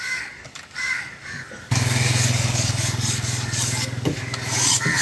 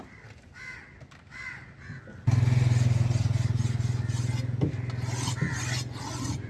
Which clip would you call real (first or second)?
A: second